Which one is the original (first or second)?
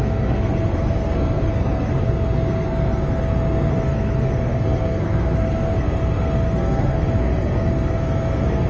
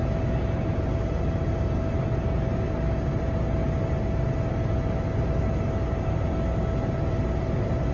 second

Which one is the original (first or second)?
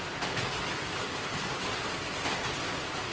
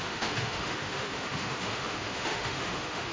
first